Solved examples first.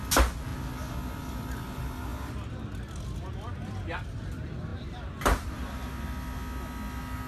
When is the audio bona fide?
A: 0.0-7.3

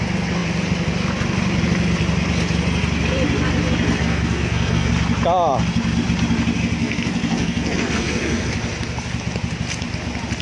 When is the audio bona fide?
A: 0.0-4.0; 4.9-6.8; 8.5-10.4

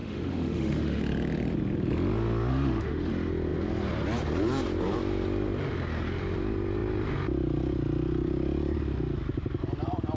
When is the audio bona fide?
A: 1.0-2.5; 3.1-10.2